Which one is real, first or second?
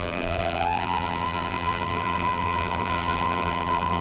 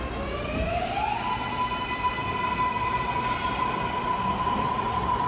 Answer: second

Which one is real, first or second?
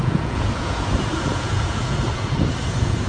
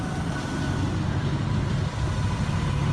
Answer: second